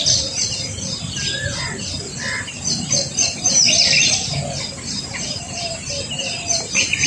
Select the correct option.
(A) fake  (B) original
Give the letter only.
B